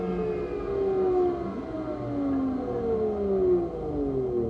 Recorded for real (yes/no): yes